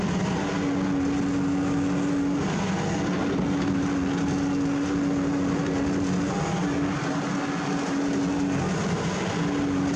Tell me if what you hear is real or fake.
real